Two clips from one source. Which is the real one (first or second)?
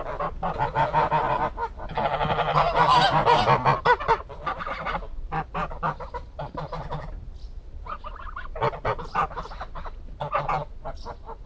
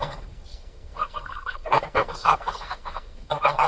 first